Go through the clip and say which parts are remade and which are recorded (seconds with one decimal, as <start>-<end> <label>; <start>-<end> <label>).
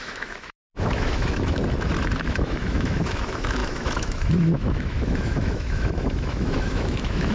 0.0-1.6 remade; 1.6-2.3 recorded; 2.3-7.3 remade